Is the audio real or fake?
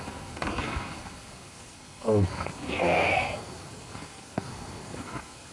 fake